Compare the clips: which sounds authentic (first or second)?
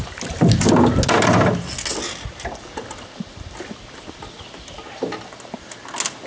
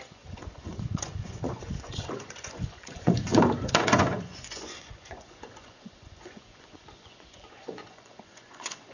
first